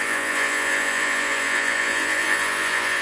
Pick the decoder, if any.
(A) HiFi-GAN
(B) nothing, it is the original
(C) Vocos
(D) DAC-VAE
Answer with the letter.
C